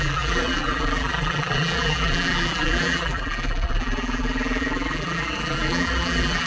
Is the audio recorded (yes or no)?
no